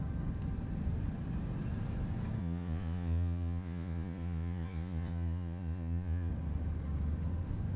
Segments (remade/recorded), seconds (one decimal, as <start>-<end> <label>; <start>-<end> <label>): 0.0-2.4 recorded; 2.4-6.3 remade; 6.3-7.8 recorded

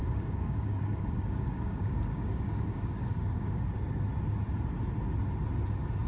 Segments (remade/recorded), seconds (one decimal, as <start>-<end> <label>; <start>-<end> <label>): 0.0-3.7 remade; 3.7-6.1 recorded

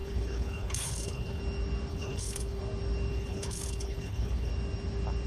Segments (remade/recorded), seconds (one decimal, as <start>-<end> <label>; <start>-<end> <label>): 0.0-1.4 remade; 1.4-1.9 recorded; 1.9-2.6 remade; 2.6-3.1 recorded; 3.1-4.5 remade; 4.5-5.3 recorded

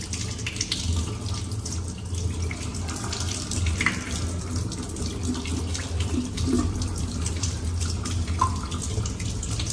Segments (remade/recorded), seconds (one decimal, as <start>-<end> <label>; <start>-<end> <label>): 0.0-2.7 recorded; 2.7-4.5 remade; 4.5-5.7 recorded; 5.7-7.5 remade; 7.5-9.7 recorded